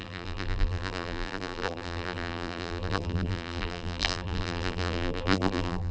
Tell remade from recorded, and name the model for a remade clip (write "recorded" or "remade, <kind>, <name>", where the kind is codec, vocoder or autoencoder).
remade, vocoder, BigVGAN v2